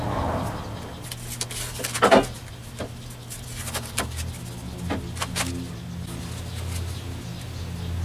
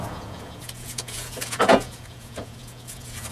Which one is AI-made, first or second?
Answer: second